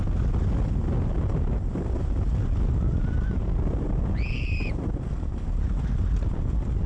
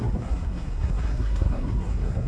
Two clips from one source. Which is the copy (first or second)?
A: second